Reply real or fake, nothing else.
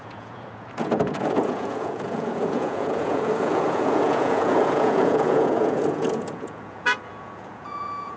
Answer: fake